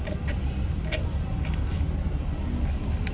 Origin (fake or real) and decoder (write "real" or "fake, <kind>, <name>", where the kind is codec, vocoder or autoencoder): real